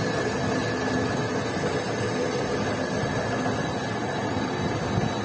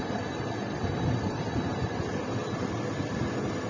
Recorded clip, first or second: first